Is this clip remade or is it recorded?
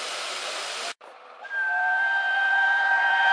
remade